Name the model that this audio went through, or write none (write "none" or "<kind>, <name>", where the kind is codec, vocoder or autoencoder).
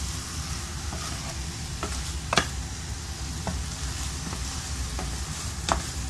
none